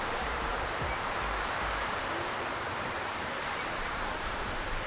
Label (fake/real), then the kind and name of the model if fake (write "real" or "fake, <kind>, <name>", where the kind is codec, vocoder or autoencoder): fake, vocoder, BigVGAN v2